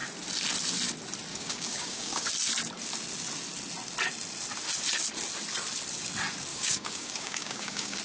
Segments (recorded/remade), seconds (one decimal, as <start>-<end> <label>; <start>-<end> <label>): 0.0-1.3 recorded; 1.3-2.3 remade; 2.3-6.5 recorded; 6.5-8.0 remade

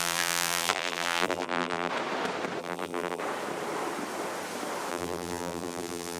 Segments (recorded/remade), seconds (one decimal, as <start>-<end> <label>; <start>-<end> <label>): 0.0-1.9 remade; 1.9-2.6 recorded; 2.6-3.2 remade; 3.2-4.9 recorded; 4.9-6.2 remade

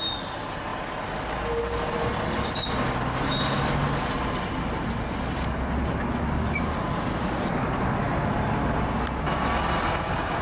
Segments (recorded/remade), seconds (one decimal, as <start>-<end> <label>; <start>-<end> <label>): 0.0-10.4 recorded

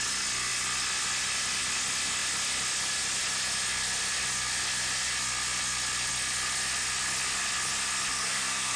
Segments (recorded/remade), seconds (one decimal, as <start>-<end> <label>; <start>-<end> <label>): 0.0-8.1 recorded; 8.1-8.8 remade

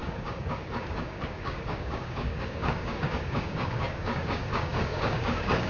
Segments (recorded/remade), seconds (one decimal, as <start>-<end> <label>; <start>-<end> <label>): 0.0-5.7 remade

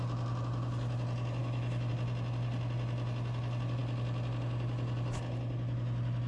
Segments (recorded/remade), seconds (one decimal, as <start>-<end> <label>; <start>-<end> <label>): 0.0-1.4 recorded; 1.4-1.9 remade; 1.9-6.3 recorded

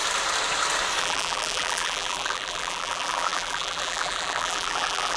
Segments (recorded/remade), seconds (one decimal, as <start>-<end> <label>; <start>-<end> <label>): 0.0-1.0 recorded; 1.0-5.2 remade